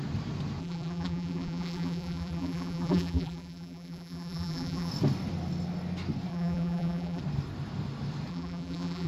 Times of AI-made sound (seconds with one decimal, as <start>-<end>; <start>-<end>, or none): 0.6-4.9; 6.3-7.2; 8.3-9.1